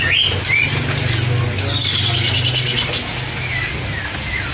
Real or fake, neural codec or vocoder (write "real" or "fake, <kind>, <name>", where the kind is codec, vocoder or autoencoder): real